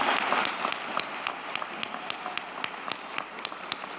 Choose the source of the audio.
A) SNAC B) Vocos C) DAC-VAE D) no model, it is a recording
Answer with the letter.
D